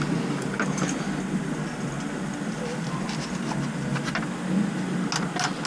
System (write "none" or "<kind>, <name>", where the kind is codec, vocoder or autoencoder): none